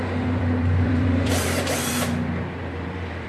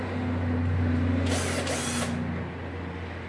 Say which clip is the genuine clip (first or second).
second